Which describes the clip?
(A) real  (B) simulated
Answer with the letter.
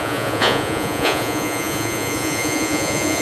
B